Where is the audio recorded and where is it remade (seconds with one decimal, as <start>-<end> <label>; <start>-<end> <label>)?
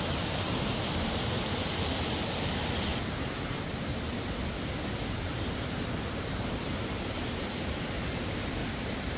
0.0-9.2 remade